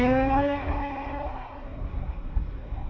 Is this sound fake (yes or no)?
yes